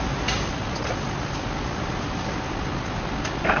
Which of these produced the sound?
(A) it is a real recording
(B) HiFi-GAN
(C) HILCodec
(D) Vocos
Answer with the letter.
A